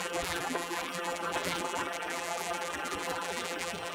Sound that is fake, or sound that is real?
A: fake